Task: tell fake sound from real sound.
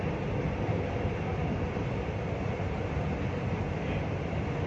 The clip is real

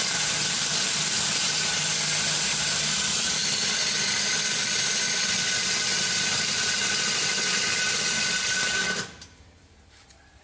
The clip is real